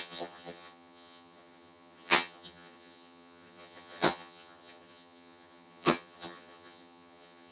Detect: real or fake fake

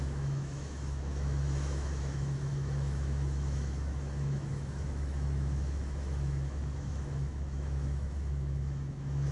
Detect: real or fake fake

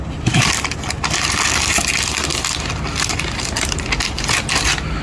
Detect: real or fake real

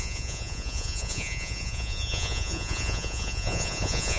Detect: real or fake fake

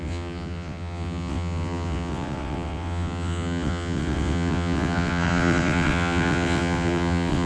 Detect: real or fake fake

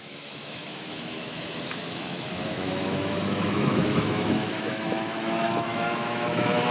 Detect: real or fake fake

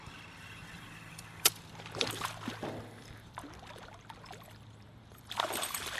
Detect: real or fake fake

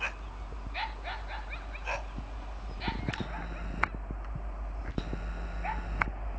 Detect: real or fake real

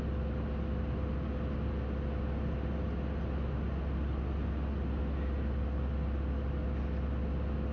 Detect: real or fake real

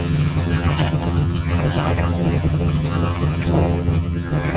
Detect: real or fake fake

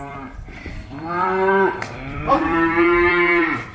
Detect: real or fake fake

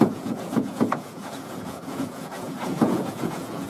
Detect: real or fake fake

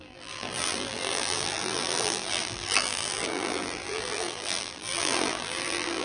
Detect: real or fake fake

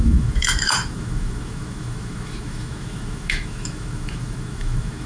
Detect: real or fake fake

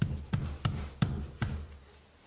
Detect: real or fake real